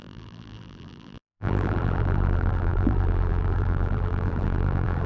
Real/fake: fake